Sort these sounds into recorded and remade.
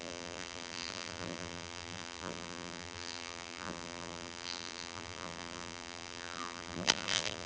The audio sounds remade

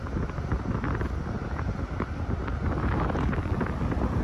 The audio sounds recorded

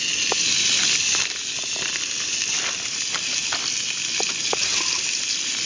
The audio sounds recorded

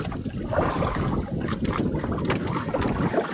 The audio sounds recorded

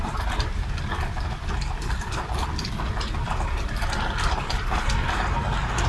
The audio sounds recorded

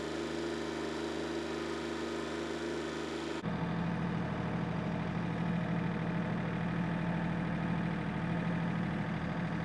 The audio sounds recorded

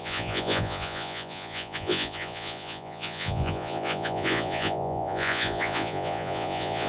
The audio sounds remade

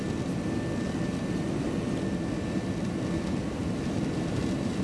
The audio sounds recorded